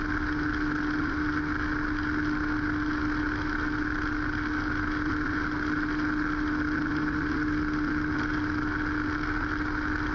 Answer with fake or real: real